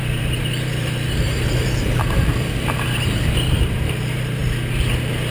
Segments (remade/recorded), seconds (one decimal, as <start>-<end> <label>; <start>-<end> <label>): 0.0-4.4 remade; 4.4-5.3 recorded

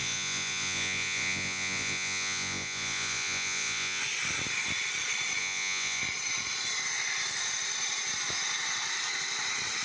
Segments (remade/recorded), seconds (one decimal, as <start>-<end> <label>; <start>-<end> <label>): 0.0-4.0 remade; 4.0-5.4 recorded; 5.4-6.0 remade; 6.0-9.8 recorded